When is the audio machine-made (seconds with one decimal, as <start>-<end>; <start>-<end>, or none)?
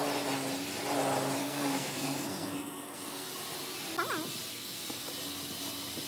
1.4-3.3; 4.5-5.1